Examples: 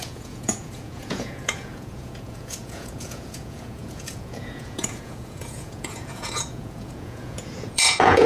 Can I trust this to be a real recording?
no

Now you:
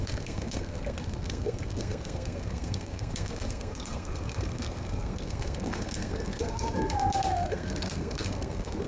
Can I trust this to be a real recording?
no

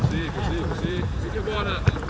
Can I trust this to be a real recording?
no